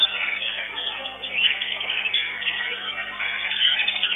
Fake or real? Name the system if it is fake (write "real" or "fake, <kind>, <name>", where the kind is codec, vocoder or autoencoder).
fake, codec, SNAC